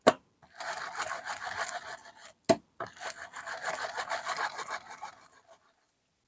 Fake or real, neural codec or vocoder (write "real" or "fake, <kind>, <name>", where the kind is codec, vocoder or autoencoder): real